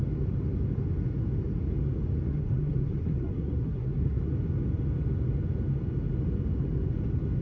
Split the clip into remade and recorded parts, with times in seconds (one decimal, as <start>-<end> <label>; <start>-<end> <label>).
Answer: 0.0-2.3 recorded; 2.3-4.2 remade; 4.2-7.4 recorded